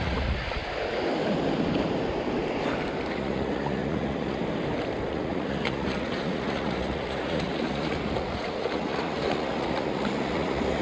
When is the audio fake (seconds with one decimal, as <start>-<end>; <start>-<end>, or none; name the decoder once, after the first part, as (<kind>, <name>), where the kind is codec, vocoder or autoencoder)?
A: 0.0-0.6 (vocoder, Vocos); 3.1-4.4; 5.1-10.8